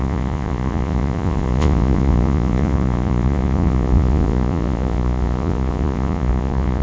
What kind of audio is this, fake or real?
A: fake